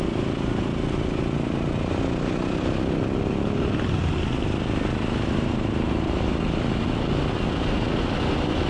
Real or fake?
real